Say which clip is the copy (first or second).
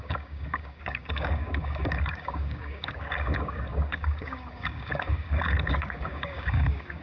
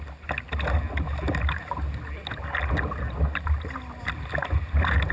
first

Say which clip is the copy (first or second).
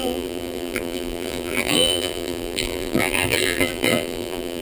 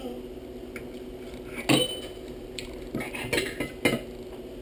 first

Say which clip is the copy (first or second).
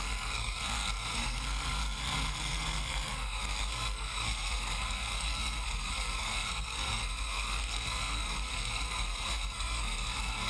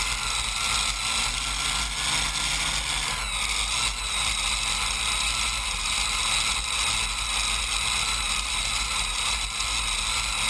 first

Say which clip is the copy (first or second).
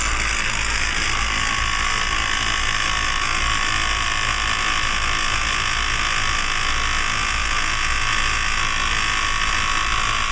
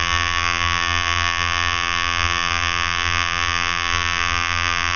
second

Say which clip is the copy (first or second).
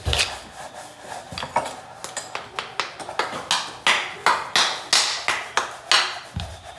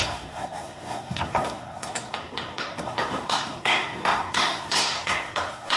second